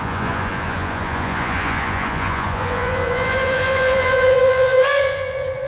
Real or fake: fake